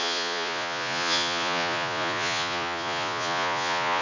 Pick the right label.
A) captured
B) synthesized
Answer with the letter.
B